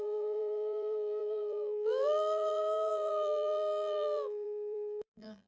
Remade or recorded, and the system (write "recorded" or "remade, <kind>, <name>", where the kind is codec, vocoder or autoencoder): remade, vocoder, BigVGAN v2